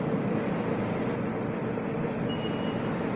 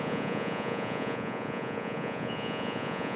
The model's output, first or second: second